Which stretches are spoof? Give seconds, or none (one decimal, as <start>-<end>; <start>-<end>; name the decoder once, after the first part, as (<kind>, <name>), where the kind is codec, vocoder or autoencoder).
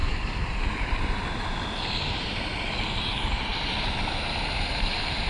0.0-3.5 (vocoder, BigVGAN v2); 4.7-5.3